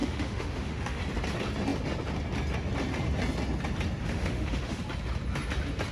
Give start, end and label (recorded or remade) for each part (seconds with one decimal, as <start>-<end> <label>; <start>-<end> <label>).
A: 0.0-1.0 remade; 1.0-4.0 recorded; 4.0-4.8 remade; 4.8-5.9 recorded